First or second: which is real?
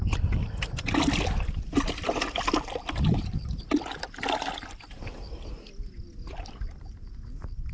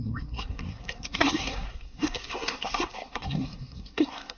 first